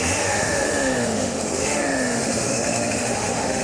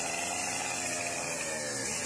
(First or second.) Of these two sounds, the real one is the second